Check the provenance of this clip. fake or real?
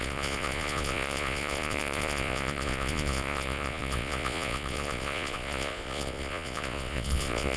fake